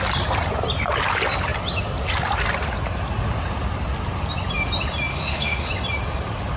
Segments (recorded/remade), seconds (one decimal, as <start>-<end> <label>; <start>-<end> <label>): 0.0-5.1 recorded; 5.1-5.7 remade; 5.7-6.6 recorded